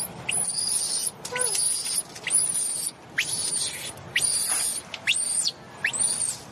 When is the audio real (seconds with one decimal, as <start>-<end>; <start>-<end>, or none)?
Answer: 0.0-6.5